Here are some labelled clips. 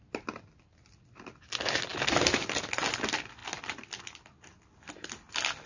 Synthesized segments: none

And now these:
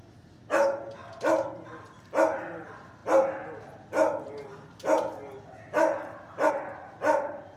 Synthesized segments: none